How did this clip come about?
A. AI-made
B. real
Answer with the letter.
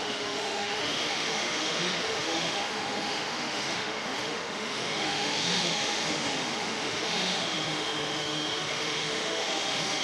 A